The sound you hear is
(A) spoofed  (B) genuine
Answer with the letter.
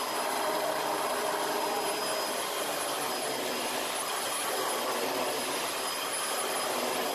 B